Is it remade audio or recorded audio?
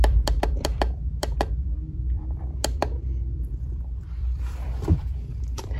remade